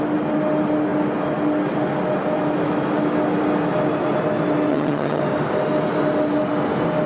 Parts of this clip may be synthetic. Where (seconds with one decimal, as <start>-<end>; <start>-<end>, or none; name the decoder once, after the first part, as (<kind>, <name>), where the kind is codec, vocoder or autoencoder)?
4.7-5.2 (vocoder, HiFi-GAN)

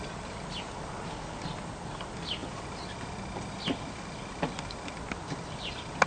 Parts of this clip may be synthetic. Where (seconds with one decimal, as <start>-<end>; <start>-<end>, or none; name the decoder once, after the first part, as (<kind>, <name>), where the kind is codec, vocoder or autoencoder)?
none

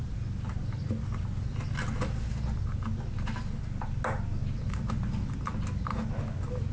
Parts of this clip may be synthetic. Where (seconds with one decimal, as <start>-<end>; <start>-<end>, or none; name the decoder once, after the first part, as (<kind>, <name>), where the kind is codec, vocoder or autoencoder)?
none

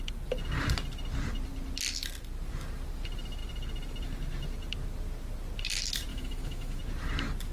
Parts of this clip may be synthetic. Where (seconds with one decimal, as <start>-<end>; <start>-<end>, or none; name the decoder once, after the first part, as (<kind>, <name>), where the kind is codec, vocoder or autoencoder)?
6.1-6.8 (autoencoder, DAC-VAE)